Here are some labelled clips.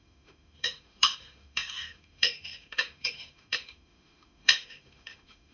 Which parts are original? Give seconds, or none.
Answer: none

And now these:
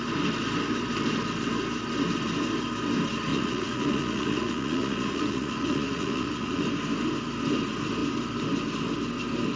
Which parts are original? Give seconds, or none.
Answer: 0.0-3.3; 6.6-9.6

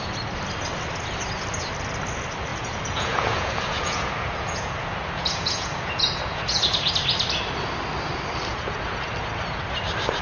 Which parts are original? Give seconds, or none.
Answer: 0.0-2.5; 6.9-8.5; 9.1-10.2

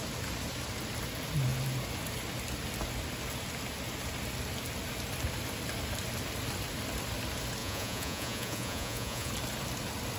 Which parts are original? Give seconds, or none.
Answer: 0.0-7.6; 9.3-10.2